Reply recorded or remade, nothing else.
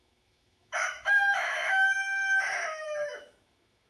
remade